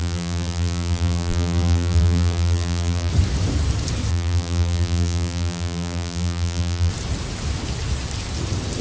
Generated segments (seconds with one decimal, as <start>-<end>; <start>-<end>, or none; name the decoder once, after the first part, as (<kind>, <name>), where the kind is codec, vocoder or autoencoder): 0.0-3.1 (vocoder, BigVGAN v2); 4.1-6.9